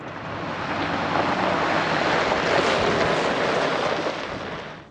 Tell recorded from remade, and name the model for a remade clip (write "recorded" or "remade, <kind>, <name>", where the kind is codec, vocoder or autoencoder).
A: recorded